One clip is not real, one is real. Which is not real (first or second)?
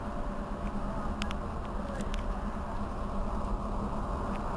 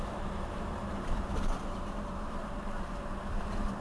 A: second